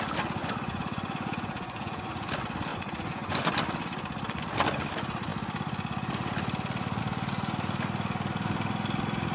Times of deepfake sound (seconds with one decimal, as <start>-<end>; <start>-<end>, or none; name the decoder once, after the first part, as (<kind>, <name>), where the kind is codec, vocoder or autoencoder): 0.4-2.3 (vocoder, Vocos); 2.7-3.5